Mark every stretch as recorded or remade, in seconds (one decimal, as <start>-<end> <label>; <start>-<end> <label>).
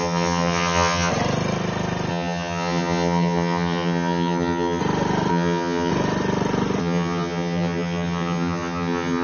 0.0-1.1 remade; 1.1-2.1 recorded; 2.1-4.8 remade; 4.8-5.3 recorded; 5.3-5.9 remade; 5.9-6.8 recorded; 6.8-9.2 remade